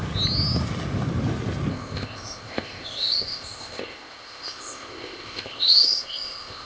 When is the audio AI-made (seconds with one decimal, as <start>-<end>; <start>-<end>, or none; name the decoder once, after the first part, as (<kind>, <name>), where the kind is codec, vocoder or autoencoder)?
1.7-6.6 (codec, ZipCodec)